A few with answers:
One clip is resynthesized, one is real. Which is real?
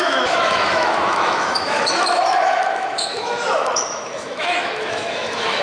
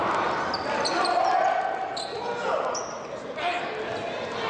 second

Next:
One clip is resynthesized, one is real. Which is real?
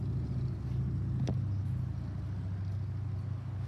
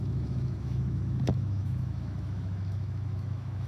first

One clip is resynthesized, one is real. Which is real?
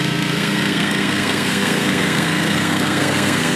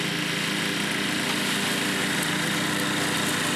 second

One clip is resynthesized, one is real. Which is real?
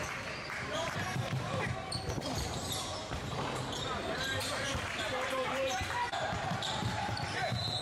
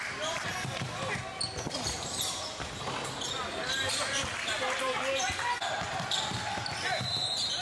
second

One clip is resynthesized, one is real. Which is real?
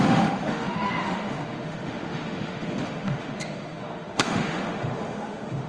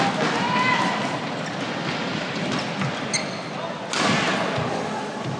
second